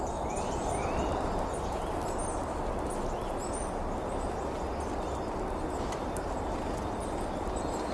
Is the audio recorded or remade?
recorded